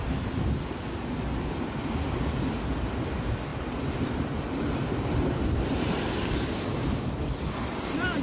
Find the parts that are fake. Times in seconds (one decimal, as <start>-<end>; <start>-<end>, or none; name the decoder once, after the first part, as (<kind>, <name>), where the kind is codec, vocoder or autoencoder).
none